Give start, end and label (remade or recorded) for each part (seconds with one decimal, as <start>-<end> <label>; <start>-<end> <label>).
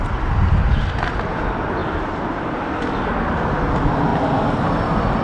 0.0-1.8 recorded; 1.8-2.6 remade; 2.6-5.2 recorded